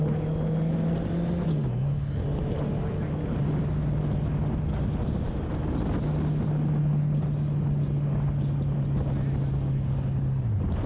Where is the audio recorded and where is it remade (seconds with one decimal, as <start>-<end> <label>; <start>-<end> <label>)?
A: 0.0-10.9 recorded